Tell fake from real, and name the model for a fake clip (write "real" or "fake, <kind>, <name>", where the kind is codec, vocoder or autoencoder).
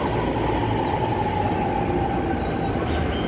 real